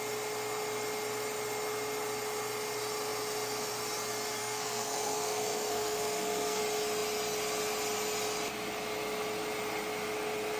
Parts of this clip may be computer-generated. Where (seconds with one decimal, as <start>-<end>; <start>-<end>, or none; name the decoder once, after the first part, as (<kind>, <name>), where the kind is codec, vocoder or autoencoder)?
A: 4.4-6.6 (codec, SNAC)